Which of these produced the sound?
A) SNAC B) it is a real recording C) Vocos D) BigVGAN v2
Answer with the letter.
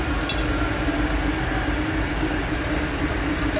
B